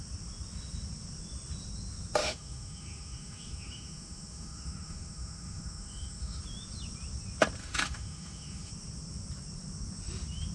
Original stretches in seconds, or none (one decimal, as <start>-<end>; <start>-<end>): 0.0-2.2; 6.4-7.6; 8.7-10.5